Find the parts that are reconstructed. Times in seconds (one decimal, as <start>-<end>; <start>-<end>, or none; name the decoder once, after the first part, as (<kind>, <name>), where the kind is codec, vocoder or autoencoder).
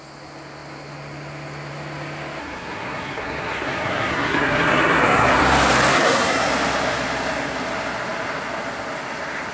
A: 2.4-5.4 (codec, SNAC); 5.9-6.5